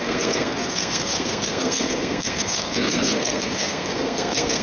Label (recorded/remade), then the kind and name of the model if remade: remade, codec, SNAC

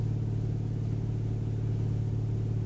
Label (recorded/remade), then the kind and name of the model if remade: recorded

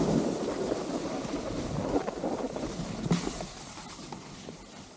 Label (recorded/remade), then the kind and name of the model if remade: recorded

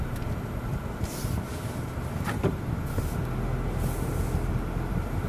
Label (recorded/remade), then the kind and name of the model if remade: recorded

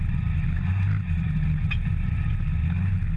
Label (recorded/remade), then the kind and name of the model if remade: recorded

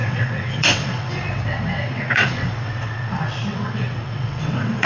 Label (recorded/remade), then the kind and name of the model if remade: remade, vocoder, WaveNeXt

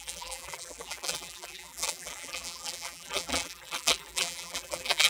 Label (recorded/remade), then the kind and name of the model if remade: remade, vocoder, BigVGAN v2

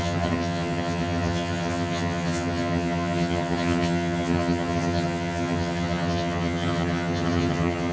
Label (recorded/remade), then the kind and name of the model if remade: remade, vocoder, HiFi-GAN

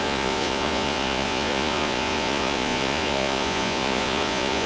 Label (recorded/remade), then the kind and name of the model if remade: remade, vocoder, Vocos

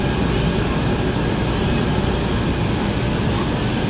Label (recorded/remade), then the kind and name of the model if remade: recorded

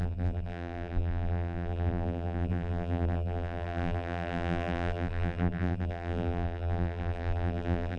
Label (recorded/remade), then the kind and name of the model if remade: remade, vocoder, BigVGAN v2